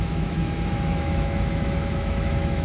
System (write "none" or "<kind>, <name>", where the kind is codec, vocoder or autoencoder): autoencoder, DAC-VAE